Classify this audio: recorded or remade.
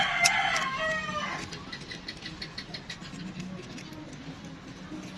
recorded